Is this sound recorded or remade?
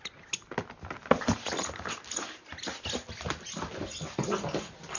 recorded